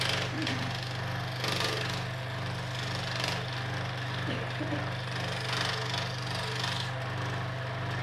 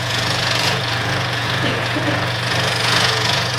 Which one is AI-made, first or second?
second